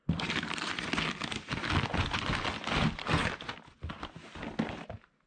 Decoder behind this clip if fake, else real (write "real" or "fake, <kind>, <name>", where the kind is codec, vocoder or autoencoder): real